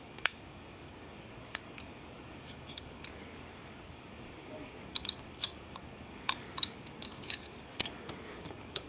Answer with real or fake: fake